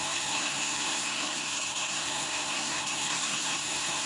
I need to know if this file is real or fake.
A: fake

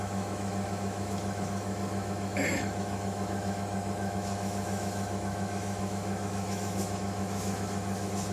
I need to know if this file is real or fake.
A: fake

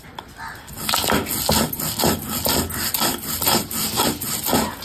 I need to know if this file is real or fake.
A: real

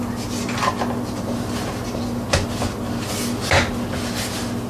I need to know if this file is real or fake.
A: real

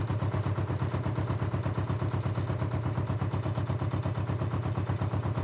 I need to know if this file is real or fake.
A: real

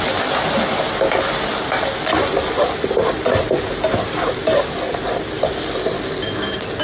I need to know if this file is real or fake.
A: real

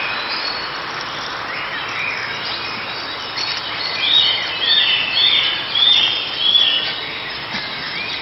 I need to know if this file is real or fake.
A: real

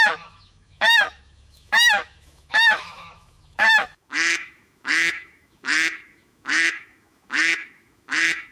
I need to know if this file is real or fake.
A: fake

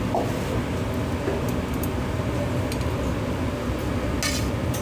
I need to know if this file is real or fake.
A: real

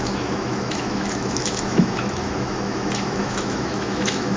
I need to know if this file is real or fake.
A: fake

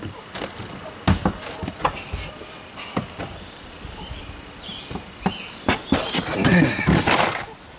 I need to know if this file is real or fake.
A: real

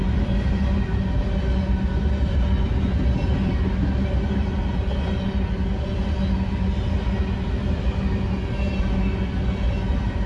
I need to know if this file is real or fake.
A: real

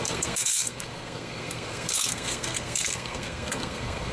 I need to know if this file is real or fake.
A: fake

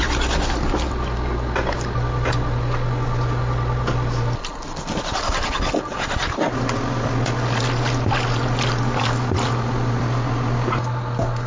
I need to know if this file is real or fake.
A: real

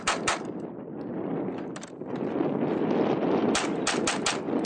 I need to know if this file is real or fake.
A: real